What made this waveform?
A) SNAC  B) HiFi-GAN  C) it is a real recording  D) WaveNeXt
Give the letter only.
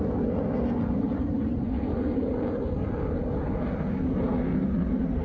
C